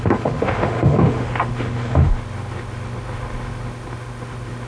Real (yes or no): no